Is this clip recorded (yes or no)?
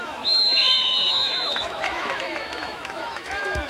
no